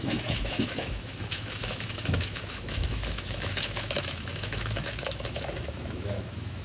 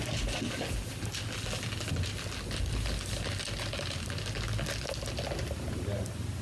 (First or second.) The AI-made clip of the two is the first